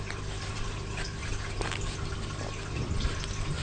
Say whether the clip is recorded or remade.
recorded